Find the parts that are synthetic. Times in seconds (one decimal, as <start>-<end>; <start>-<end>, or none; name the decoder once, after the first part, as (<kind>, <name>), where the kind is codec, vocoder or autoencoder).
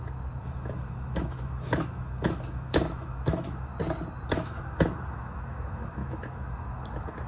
0.0-3.7 (autoencoder, DAC-VAE); 4.3-7.3